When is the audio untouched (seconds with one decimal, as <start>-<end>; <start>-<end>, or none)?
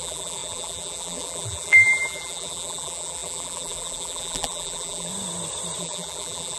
5.1-5.8